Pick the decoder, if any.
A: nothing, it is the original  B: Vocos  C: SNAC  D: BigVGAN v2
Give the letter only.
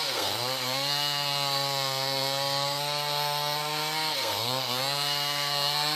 C